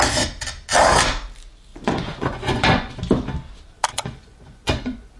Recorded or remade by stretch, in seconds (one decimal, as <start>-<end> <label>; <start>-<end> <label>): 0.0-1.7 recorded; 1.7-2.9 remade; 2.9-3.9 recorded; 3.9-5.2 remade